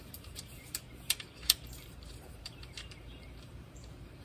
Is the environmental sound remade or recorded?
remade